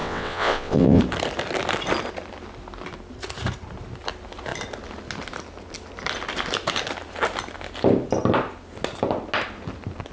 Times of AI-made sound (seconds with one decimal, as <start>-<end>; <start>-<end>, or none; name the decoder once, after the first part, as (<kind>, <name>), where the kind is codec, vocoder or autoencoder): 0.0-1.0 (vocoder, WaveNeXt)